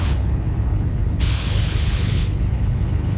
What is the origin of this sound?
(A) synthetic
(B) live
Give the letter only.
A